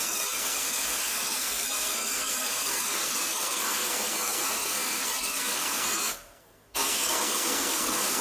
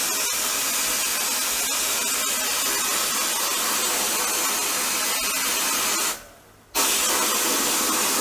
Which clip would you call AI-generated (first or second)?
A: first